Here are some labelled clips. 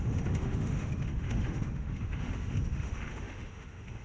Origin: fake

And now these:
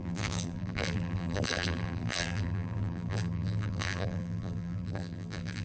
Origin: fake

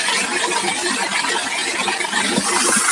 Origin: real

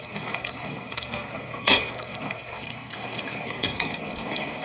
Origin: fake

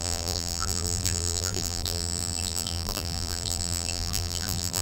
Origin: fake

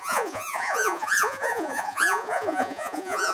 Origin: fake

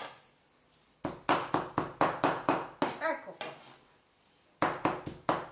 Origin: real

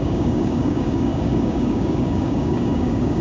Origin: fake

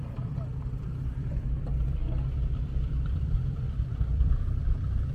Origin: fake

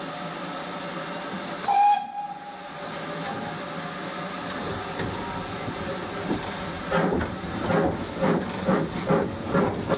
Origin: real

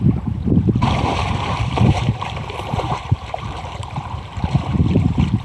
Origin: fake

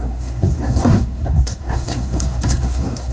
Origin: fake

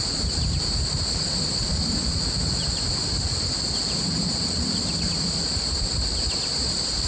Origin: real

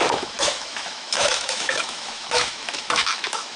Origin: fake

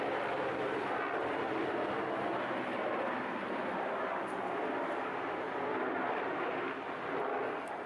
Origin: real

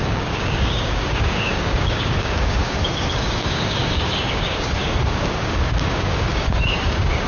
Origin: fake